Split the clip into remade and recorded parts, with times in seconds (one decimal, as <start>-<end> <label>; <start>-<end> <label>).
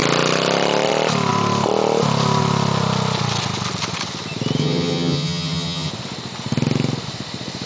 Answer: 0.0-4.6 recorded; 4.6-5.9 remade; 5.9-7.7 recorded